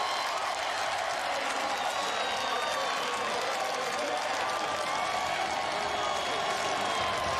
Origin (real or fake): real